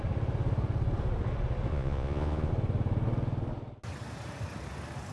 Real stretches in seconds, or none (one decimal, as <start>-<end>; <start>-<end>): 0.0-1.7; 2.5-5.1